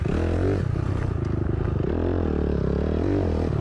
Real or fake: real